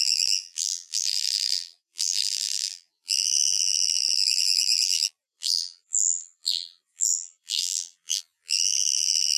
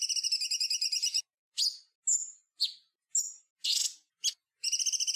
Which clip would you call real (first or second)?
second